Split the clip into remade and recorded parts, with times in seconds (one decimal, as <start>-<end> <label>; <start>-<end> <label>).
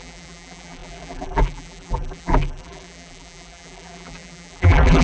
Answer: 0.0-5.0 remade